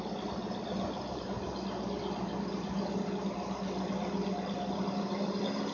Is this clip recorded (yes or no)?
yes